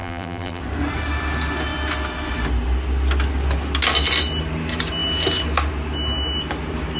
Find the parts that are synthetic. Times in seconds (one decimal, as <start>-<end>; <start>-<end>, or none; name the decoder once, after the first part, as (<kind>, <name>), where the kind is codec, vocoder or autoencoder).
0.0-0.6 (vocoder, BigVGAN v2)